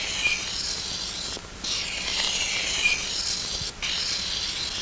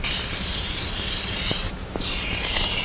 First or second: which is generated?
second